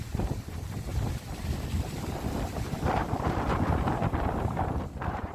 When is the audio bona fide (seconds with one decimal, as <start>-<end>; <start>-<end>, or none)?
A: 0.9-2.5; 3.0-4.4